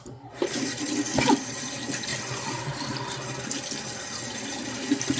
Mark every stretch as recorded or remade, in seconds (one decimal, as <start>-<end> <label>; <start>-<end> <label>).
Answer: 0.0-5.2 recorded